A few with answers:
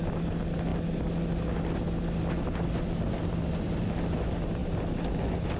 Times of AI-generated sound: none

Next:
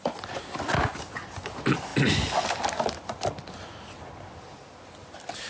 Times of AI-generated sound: none

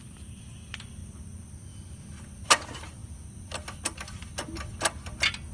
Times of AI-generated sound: none

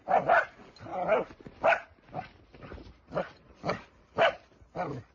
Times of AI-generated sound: none

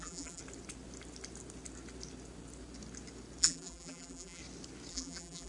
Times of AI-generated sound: 0.0-0.4 (vocoder, BigVGAN v2); 3.4-4.4; 4.9-5.5

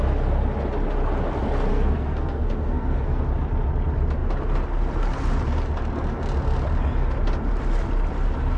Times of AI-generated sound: 1.7-3.2 (codec, SNAC)

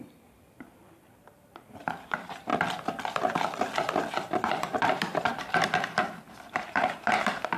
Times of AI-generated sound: 0.0-2.5 (vocoder, BigVGAN v2); 4.5-7.6

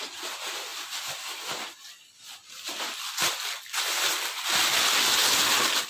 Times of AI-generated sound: none